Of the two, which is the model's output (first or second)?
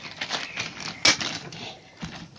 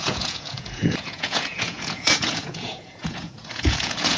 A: second